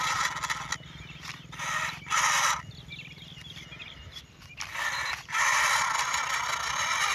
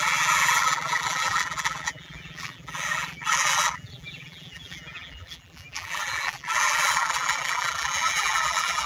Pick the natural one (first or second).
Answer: first